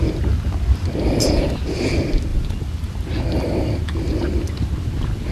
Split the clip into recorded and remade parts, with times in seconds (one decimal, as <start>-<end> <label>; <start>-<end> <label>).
0.0-5.3 recorded